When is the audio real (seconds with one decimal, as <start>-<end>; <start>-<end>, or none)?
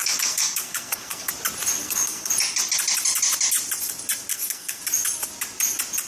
1.3-1.8; 2.3-4.3; 4.8-6.1